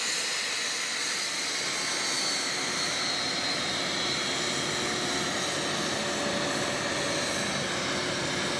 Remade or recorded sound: recorded